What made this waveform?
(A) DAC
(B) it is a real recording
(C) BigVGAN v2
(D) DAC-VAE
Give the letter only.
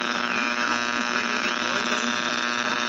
D